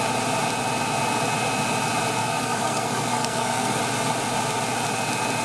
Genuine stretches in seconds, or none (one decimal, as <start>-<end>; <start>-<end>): 0.0-2.2; 3.8-5.4